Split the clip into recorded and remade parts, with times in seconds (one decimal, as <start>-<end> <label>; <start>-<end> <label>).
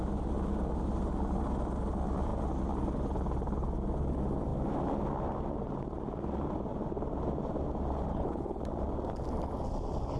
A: 0.0-8.1 recorded; 8.1-8.6 remade; 8.6-10.2 recorded